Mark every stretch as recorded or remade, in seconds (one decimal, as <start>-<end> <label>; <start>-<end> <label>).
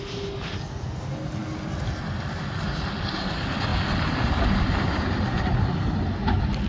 0.0-6.7 recorded